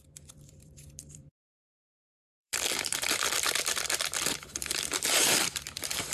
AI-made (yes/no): yes